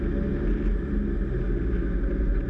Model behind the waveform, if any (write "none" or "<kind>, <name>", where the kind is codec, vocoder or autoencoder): none